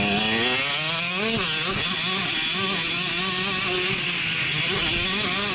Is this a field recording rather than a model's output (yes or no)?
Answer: yes